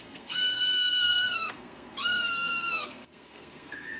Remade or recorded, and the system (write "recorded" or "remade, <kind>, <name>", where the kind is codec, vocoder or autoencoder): remade, codec, SNAC